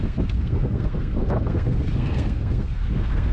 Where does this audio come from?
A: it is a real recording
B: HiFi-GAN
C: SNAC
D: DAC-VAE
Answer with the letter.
C